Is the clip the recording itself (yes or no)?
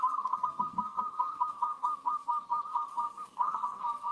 no